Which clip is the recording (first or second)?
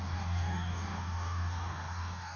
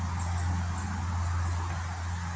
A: second